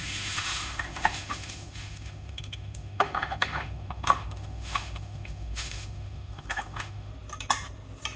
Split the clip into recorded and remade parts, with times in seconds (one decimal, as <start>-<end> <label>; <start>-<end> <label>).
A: 0.0-7.1 remade; 7.1-8.2 recorded